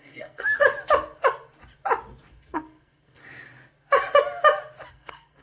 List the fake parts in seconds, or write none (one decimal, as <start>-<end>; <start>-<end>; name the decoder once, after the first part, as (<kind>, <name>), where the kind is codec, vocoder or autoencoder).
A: 0.0-0.6 (codec, SNAC); 2.3-3.2; 4.9-5.4